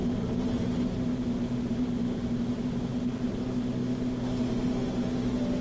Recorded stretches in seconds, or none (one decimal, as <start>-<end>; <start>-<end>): 3.4-5.6